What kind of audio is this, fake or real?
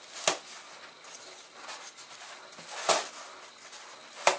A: real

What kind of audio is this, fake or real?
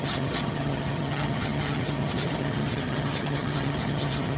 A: fake